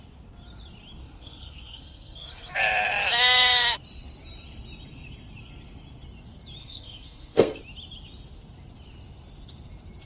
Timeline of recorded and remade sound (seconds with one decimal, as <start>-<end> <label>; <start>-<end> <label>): 0.0-1.0 recorded; 1.0-2.5 remade; 2.5-6.6 recorded; 6.6-7.6 remade; 7.6-10.1 recorded